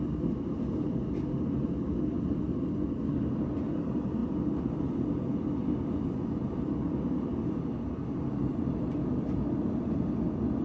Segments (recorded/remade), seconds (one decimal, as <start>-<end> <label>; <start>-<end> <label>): 0.0-10.6 remade